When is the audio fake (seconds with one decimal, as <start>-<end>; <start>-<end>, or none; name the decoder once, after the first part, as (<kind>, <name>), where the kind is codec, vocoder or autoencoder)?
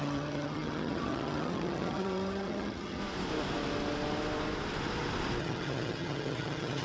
0.0-3.0 (vocoder, HiFi-GAN); 5.4-6.8